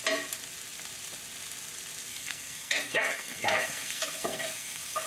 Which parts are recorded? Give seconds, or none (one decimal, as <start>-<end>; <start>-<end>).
0.0-2.1